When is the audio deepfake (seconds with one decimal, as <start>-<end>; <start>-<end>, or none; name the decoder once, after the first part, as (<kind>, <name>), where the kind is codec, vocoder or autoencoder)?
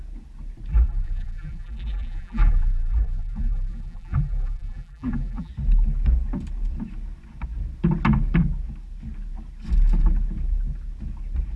0.7-5.5 (vocoder, BigVGAN v2)